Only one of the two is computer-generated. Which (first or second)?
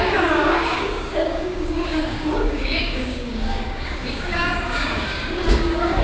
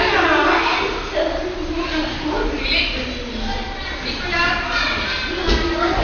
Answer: first